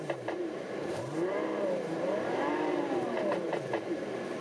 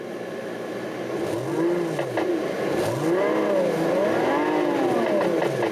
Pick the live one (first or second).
second